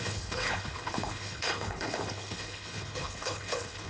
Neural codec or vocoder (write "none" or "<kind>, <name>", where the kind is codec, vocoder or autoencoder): codec, HILCodec